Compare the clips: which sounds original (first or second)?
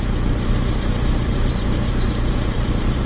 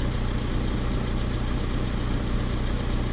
second